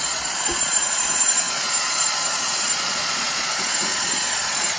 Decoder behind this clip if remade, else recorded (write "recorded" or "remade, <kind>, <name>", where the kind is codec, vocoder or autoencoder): remade, vocoder, Vocos